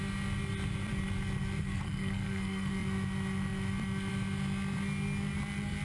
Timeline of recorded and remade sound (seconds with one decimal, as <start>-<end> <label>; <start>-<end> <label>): 0.0-1.6 recorded; 1.6-2.7 remade; 2.7-5.8 recorded